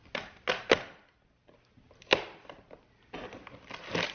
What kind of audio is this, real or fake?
real